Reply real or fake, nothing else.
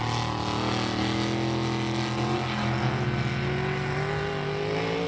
real